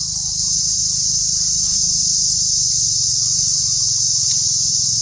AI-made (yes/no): yes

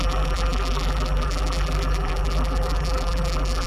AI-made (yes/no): yes